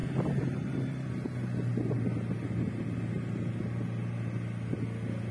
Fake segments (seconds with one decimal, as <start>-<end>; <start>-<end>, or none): 0.0-1.1